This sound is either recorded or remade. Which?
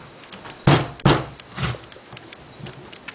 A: recorded